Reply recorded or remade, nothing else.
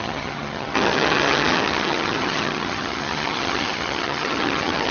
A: remade